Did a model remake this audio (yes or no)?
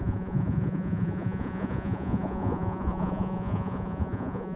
yes